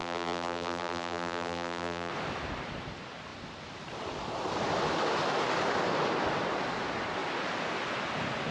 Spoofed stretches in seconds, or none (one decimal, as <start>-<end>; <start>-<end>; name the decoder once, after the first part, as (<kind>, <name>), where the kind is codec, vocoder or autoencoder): 0.0-2.1 (vocoder, BigVGAN v2)